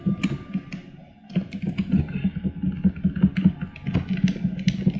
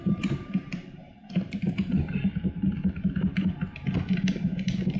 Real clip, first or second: first